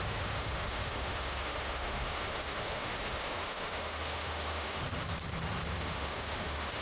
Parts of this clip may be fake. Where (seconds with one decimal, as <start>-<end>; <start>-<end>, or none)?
0.0-4.8; 5.7-6.8

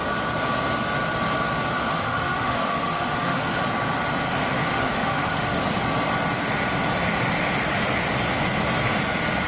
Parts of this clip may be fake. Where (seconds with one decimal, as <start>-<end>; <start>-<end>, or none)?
1.7-3.6; 4.3-5.6

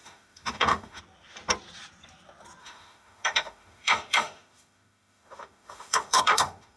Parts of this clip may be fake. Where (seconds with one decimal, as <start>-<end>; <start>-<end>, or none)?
0.0-1.0; 2.6-6.8

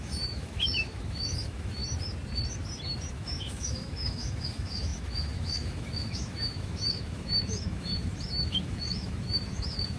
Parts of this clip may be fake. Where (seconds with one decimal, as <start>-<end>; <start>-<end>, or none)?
0.0-1.8; 3.1-10.0

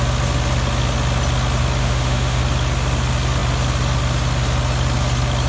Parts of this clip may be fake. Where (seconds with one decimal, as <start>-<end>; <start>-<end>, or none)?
1.8-2.4

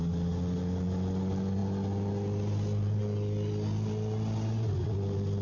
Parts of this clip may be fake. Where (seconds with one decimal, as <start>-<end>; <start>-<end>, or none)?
none